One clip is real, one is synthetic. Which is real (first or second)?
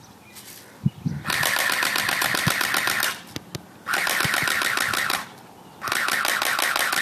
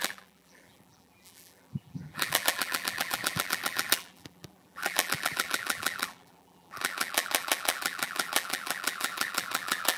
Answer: first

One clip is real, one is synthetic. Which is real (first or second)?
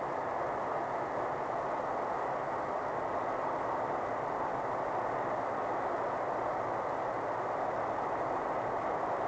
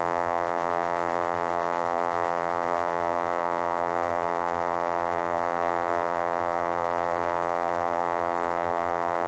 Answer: first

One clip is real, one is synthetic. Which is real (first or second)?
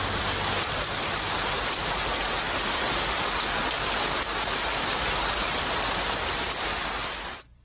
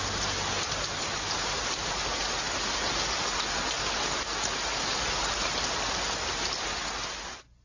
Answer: second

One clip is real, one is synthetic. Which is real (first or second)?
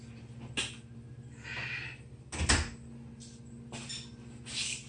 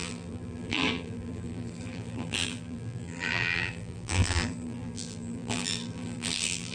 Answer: first